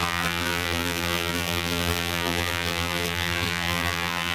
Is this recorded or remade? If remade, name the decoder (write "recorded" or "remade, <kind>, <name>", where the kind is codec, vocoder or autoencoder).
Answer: remade, vocoder, BigVGAN v2